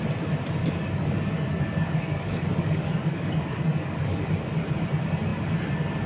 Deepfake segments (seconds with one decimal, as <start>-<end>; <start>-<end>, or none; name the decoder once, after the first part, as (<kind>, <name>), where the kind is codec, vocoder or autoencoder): 0.6-4.3 (codec, DAC)